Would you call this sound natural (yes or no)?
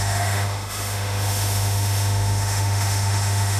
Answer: no